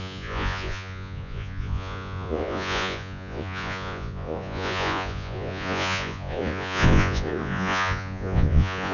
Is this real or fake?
fake